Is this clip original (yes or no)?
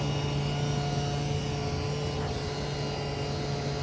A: yes